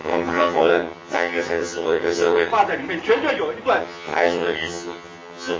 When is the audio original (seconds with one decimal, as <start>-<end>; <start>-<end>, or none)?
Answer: 2.5-3.8